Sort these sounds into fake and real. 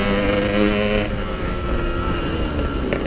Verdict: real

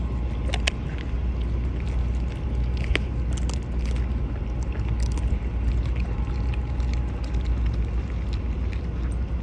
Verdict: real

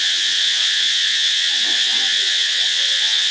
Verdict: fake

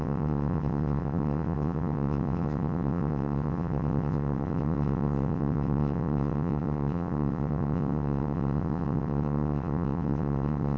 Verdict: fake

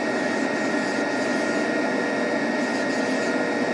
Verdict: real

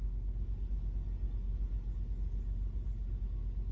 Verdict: real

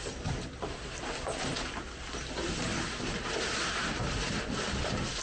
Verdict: real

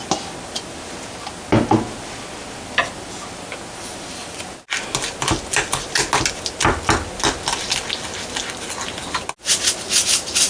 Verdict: real